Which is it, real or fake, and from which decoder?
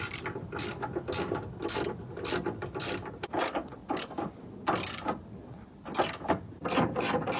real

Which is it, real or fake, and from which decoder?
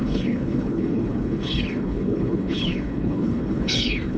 fake, codec, HILCodec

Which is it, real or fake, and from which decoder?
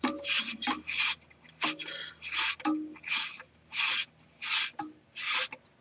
real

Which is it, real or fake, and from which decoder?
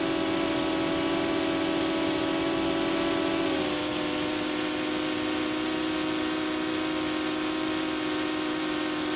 real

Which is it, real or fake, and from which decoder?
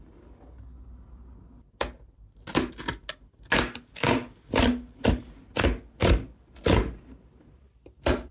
real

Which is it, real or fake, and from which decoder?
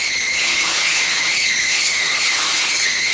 fake, codec, HILCodec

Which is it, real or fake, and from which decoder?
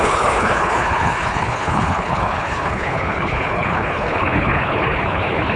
fake, codec, HILCodec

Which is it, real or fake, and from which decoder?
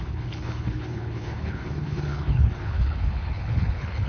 fake, codec, HILCodec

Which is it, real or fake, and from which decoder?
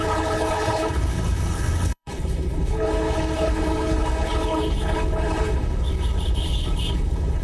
fake, codec, HILCodec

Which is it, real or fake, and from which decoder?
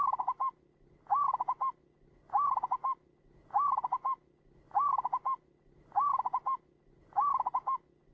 real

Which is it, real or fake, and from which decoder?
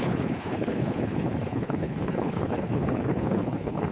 fake, codec, HILCodec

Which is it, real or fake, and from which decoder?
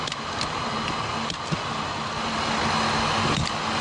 real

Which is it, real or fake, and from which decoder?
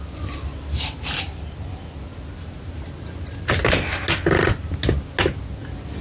real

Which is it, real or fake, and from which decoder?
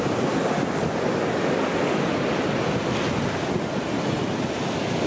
real